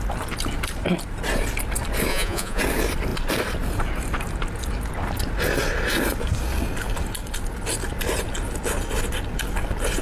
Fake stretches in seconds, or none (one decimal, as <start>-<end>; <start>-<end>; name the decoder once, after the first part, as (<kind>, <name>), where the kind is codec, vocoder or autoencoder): 2.1-2.6 (vocoder, Vocos)